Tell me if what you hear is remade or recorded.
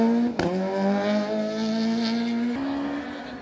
recorded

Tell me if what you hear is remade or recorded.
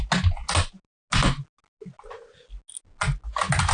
recorded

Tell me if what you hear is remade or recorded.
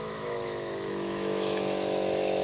remade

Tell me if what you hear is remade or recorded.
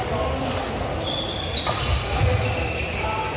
recorded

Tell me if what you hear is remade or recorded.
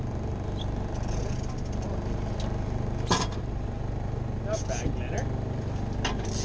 recorded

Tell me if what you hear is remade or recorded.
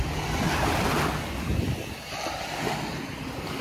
recorded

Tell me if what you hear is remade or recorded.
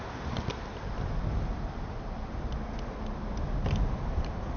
recorded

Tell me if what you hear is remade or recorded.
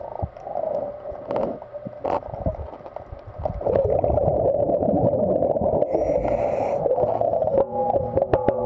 recorded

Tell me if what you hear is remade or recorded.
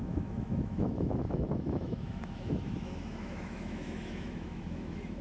remade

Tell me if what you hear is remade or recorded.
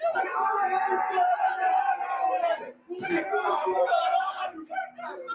recorded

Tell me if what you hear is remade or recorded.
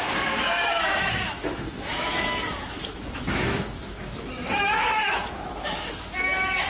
remade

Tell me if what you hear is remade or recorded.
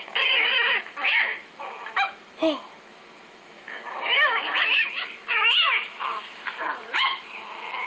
remade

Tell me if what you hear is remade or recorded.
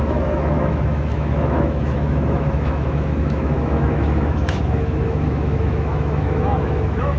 remade